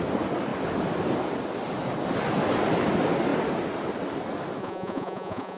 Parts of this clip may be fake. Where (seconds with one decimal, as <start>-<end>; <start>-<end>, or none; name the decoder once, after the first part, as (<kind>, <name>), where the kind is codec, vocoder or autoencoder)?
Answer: 4.6-5.6 (vocoder, Vocos)